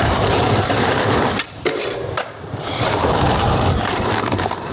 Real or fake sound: fake